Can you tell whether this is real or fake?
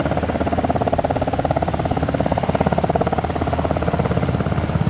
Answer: real